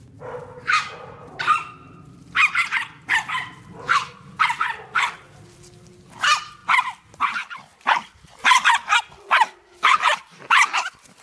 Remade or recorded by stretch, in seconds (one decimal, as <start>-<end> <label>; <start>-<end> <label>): 0.0-7.7 recorded; 7.7-8.7 remade; 8.7-11.2 recorded